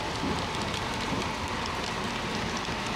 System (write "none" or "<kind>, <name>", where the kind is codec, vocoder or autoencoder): none